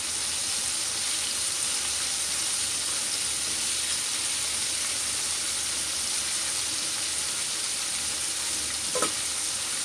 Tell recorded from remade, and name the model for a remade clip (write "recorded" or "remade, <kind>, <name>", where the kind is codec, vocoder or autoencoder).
recorded